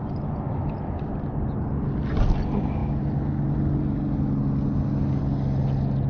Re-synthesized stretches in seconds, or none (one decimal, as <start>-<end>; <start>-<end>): none